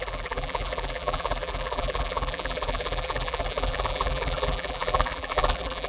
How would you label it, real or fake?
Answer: fake